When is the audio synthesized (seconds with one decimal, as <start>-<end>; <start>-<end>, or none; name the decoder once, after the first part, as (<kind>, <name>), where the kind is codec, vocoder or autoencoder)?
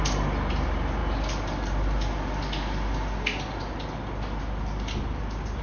none